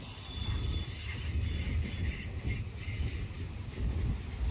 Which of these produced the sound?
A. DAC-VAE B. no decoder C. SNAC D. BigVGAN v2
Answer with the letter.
B